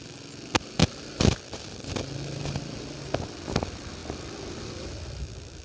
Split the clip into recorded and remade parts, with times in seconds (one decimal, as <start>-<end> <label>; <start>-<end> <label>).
0.0-0.8 recorded; 0.8-2.6 remade; 2.6-4.0 recorded; 4.0-4.5 remade; 4.5-5.6 recorded

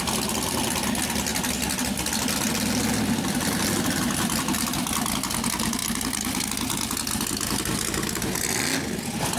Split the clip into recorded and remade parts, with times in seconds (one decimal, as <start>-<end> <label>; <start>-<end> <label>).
0.0-9.4 recorded

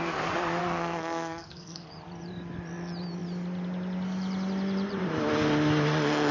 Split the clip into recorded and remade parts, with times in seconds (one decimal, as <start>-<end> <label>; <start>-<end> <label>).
0.0-0.6 recorded; 0.6-1.9 remade; 1.9-6.3 recorded

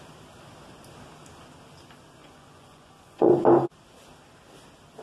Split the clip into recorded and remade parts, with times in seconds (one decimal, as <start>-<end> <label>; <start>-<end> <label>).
0.0-2.2 recorded; 2.2-3.4 remade; 3.4-5.0 recorded